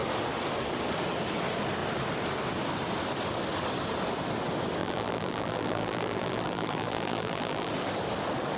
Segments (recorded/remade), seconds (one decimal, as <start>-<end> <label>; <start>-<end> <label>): 0.0-4.8 recorded; 4.8-7.7 remade; 7.7-8.6 recorded